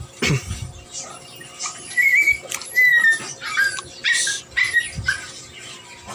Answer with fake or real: real